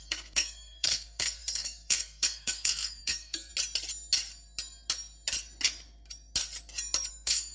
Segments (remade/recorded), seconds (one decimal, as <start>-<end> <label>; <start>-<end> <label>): 0.0-3.5 remade; 3.5-7.1 recorded; 7.1-7.5 remade